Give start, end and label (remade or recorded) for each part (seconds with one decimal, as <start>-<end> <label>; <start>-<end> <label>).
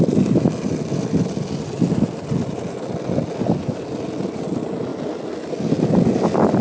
0.0-6.6 recorded